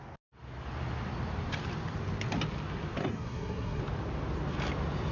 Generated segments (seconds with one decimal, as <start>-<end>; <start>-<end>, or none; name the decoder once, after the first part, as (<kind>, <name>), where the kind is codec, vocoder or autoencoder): 3.0-3.8 (codec, SNAC)